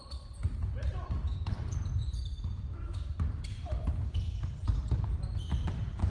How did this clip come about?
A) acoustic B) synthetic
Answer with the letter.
B